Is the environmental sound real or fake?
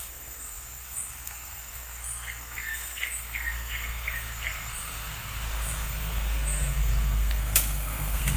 fake